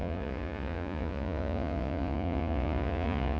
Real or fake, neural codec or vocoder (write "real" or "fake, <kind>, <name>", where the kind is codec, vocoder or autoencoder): fake, vocoder, Vocos